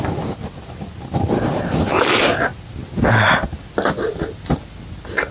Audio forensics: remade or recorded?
recorded